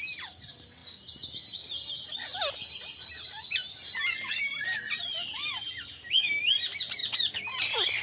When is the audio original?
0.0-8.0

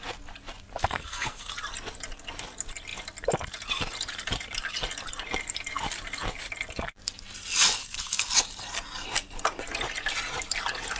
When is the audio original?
0.0-0.8; 1.5-7.8; 8.3-11.0

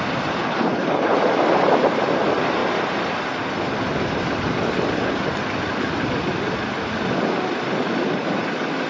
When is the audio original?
0.0-0.4; 1.2-8.9

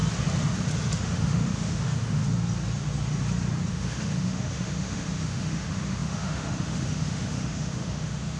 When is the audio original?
0.0-1.0; 2.2-3.7

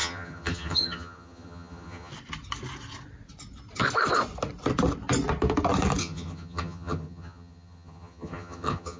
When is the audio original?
2.1-6.0

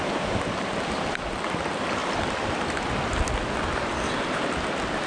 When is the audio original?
0.0-5.1

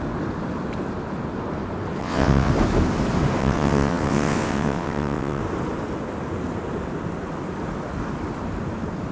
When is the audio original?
0.0-2.0; 2.5-3.4; 5.4-9.1

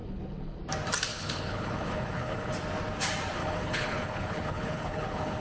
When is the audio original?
0.6-1.1; 2.5-3.4